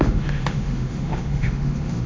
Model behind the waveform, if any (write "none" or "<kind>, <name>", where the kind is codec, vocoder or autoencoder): autoencoder, DAC-VAE